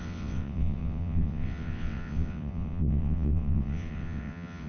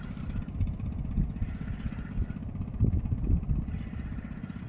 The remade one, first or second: first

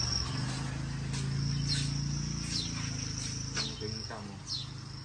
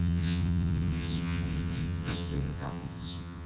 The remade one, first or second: second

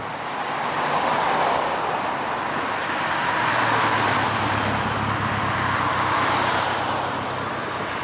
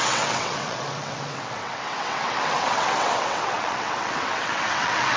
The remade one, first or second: second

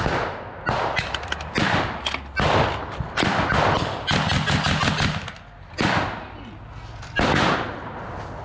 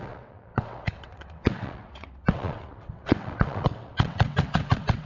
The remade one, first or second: second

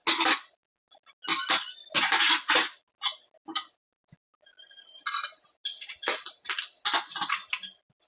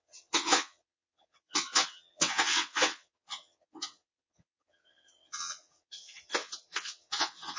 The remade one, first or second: second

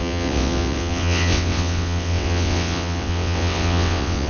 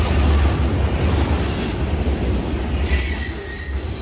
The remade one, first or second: first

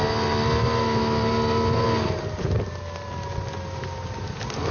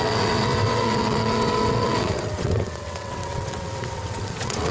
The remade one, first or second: second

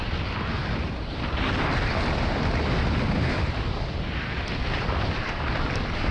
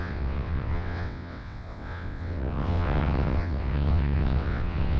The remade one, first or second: second